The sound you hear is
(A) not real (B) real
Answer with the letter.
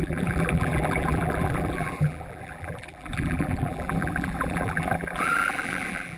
A